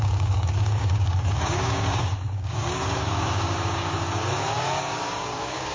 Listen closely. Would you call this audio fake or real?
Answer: fake